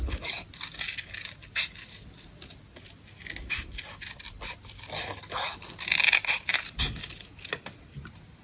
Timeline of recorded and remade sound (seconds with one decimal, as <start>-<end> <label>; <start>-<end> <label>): 0.0-8.4 recorded